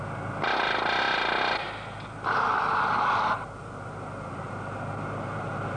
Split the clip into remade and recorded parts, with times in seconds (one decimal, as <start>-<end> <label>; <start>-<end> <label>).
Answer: 0.0-5.8 recorded